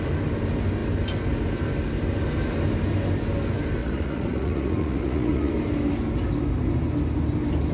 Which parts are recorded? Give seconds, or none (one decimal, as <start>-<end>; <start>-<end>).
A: 0.0-3.8; 5.5-7.7